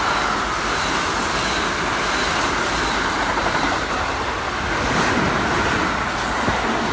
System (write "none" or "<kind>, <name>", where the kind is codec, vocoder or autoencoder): none